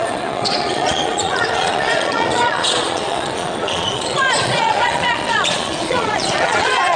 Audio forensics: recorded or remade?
remade